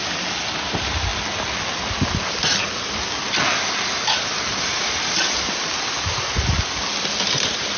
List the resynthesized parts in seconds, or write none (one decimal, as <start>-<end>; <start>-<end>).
none